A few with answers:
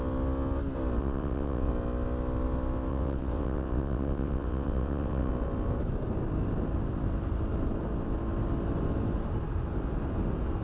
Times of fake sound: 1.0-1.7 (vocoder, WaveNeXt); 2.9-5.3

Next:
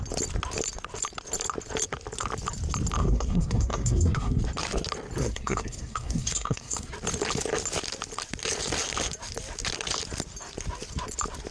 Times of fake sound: 3.0-4.4 (codec, SNAC); 5.2-6.9

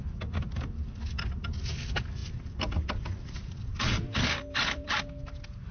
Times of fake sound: 0.0-1.2 (vocoder, BigVGAN v2); 2.2-5.0

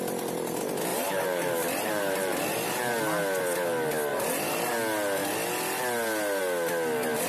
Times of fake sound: 0.9-3.0 (vocoder, BigVGAN v2); 4.1-4.7

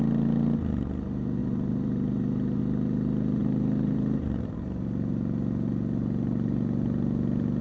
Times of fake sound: 1.4-2.6 (vocoder, BigVGAN v2); 3.4-4.5

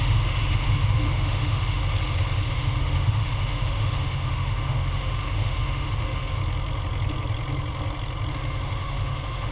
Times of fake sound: 0.0-1.8 (autoencoder, DAC-VAE); 2.5-6.4; 8.3-9.5

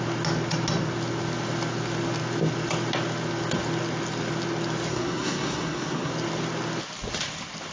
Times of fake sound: 4.9-6.1 (codec, SNAC)